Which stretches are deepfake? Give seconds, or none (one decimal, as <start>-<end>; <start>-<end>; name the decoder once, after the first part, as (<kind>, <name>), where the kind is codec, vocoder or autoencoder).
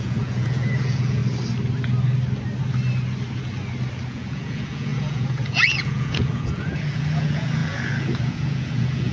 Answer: 0.0-1.2 (vocoder, Vocos); 4.1-9.1